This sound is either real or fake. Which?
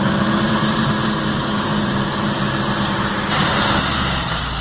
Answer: fake